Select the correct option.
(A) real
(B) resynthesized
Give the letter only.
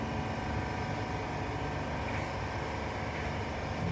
A